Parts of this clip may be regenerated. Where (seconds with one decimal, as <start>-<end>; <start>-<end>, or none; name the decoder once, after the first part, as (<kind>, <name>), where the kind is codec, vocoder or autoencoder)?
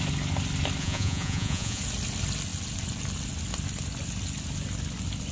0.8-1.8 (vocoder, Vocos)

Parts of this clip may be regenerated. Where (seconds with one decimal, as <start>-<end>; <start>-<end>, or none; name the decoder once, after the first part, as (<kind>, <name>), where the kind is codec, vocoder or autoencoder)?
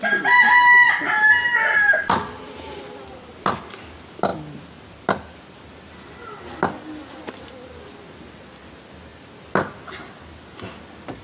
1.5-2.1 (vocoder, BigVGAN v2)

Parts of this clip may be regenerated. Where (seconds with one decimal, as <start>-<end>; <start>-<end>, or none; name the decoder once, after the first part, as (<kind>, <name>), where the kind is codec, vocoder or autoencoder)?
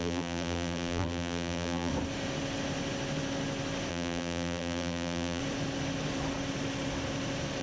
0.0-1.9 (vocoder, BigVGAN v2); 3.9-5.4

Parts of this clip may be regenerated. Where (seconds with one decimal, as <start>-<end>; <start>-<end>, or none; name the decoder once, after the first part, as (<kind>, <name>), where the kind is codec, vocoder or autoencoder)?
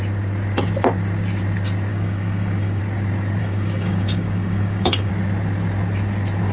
1.9-2.8 (codec, DAC); 3.4-5.1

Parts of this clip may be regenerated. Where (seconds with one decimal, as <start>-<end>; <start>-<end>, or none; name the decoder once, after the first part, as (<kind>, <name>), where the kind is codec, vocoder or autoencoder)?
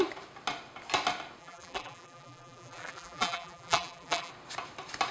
1.4-4.3 (vocoder, BigVGAN v2)